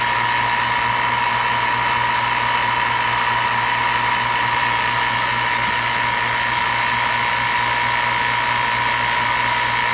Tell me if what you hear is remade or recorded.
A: recorded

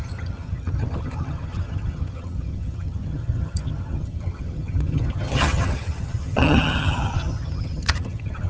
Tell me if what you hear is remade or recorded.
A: remade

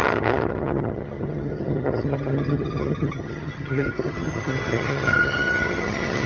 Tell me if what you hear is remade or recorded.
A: remade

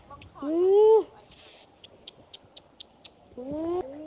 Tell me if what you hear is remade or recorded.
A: recorded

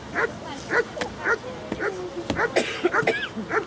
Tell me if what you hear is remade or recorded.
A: recorded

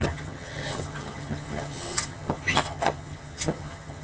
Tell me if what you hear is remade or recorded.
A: remade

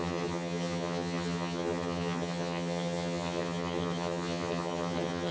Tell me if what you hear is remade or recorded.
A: remade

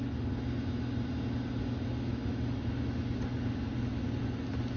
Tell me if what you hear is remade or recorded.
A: recorded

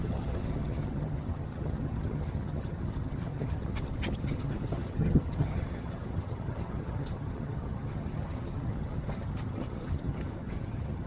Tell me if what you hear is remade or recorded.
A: remade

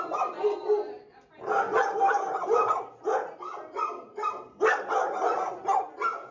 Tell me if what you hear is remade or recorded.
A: recorded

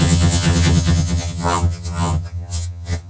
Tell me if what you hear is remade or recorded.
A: remade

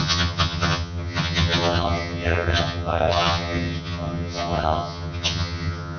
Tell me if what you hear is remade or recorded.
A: remade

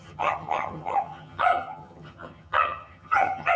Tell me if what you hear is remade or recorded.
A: remade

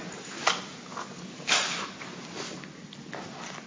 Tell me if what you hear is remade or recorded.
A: recorded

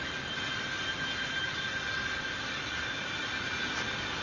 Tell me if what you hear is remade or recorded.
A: recorded